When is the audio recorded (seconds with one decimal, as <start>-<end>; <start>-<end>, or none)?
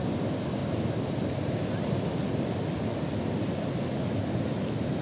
0.0-5.0